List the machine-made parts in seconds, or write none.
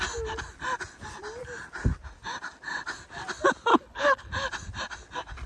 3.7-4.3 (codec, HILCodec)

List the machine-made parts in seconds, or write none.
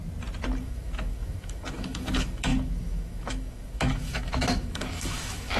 0.6-5.6 (autoencoder, DAC-VAE)